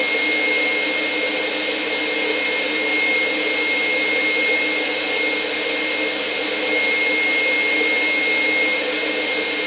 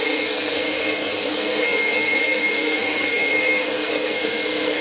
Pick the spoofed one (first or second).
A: second